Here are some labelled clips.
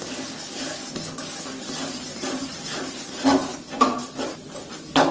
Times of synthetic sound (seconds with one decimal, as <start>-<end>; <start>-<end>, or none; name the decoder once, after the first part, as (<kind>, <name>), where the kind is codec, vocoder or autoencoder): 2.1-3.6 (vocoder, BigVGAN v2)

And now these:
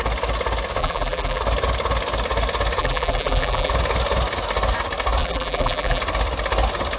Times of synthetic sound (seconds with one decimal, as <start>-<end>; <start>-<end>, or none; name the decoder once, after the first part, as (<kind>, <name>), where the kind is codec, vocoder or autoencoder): 0.8-1.4 (vocoder, BigVGAN v2); 2.8-3.7; 5.2-6.0

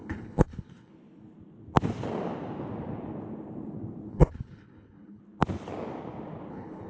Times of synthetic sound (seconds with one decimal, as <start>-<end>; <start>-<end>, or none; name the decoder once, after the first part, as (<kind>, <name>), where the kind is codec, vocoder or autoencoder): 0.0-0.9 (codec, HILCodec); 4.1-5.2; 6.5-6.9

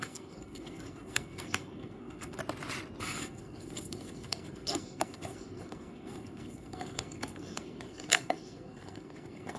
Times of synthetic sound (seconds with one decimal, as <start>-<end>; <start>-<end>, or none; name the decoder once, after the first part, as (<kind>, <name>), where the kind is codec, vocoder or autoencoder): 0.0-2.4 (codec, SNAC); 3.0-9.6